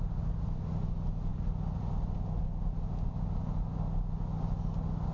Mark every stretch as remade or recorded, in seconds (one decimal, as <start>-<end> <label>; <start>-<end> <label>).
0.0-5.1 recorded